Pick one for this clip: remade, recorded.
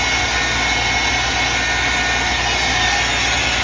recorded